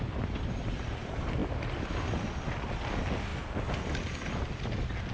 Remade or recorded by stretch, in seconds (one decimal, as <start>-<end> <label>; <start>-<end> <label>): 0.0-5.1 recorded